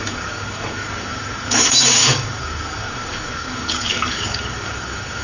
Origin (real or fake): fake